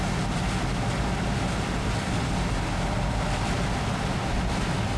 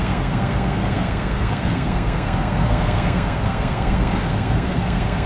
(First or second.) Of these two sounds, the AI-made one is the second